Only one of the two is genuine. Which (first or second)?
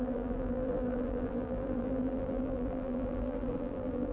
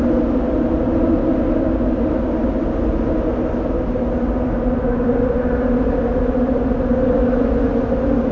second